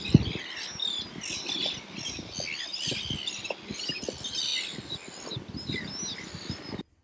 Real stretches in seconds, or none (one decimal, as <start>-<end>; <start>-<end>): 0.0-7.0